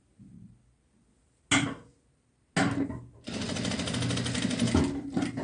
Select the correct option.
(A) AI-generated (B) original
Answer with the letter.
B